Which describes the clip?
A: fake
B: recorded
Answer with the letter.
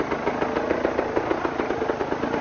A